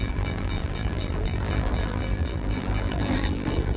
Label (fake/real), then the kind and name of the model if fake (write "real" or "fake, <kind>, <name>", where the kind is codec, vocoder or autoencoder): fake, vocoder, BigVGAN v2